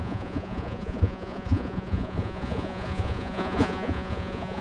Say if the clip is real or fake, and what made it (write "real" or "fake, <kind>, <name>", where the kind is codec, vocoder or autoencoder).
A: fake, vocoder, Vocos